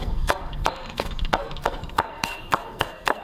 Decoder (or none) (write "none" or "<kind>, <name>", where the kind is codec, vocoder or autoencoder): codec, SNAC